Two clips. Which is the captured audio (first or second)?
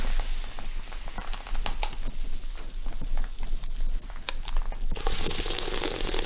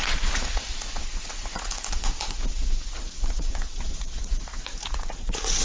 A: first